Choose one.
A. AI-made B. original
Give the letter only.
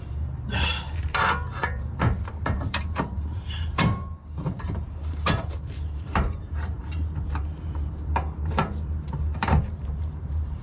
A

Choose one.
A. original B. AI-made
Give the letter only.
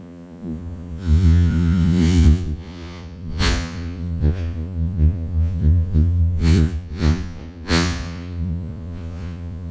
B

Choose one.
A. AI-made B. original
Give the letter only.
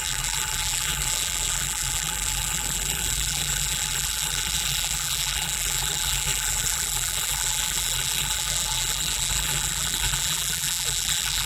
A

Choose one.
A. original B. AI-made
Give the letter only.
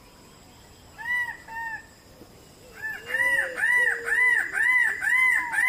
A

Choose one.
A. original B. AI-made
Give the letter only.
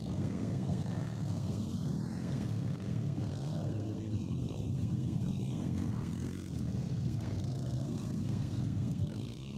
B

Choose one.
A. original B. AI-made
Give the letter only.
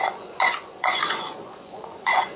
B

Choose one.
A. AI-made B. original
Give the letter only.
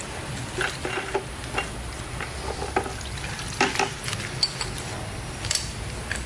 B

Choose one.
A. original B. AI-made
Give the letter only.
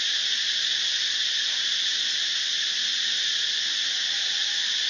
A